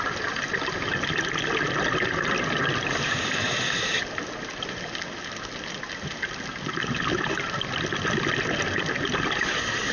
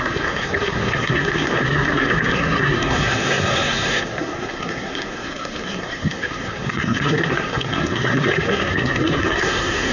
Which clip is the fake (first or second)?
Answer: second